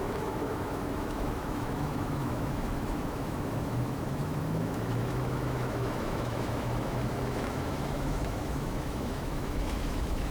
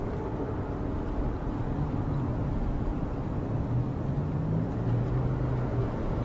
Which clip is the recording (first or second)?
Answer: second